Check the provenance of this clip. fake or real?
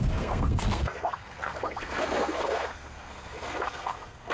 fake